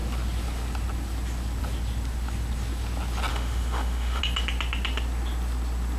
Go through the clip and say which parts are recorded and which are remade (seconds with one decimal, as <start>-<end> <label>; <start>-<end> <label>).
0.0-3.3 recorded; 3.3-4.2 remade; 4.2-6.0 recorded

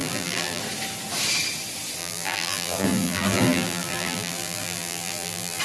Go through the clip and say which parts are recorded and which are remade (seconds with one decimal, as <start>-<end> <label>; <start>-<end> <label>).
0.0-0.6 remade; 0.6-2.0 recorded; 2.0-5.6 remade

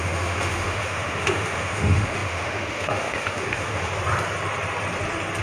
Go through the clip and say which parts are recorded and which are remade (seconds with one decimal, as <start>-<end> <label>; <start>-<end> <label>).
0.0-3.9 remade; 3.9-5.4 recorded